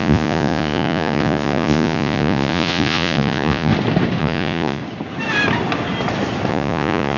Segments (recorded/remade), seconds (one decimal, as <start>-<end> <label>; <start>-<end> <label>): 0.0-3.7 remade; 3.7-4.2 recorded; 4.2-4.8 remade; 4.8-6.5 recorded; 6.5-7.2 remade